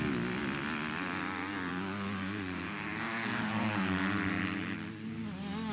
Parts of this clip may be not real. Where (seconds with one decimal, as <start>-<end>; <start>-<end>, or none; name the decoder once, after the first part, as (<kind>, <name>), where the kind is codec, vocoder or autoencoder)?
none